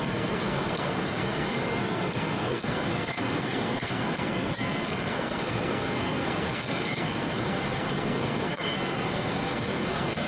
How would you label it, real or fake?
fake